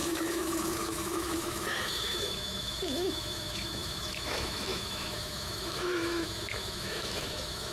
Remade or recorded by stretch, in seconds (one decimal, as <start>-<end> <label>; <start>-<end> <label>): 0.0-7.7 remade